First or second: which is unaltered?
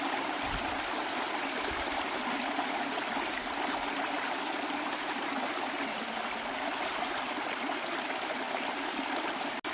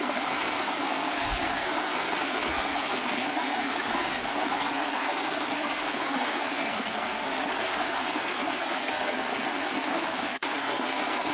first